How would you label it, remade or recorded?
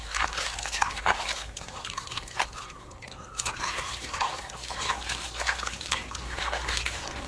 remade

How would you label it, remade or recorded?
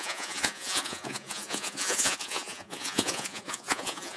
remade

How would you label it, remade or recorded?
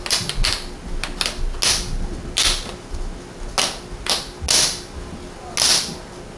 recorded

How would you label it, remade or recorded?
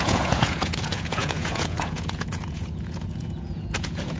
remade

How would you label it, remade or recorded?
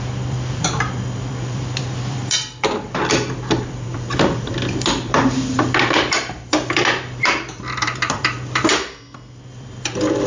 remade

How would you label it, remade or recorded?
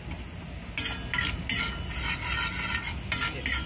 recorded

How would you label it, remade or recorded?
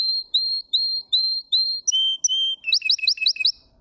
recorded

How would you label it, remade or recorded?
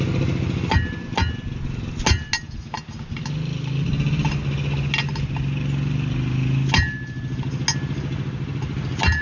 recorded